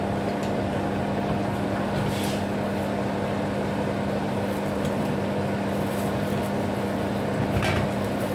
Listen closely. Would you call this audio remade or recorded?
recorded